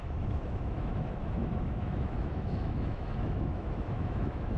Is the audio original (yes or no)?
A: no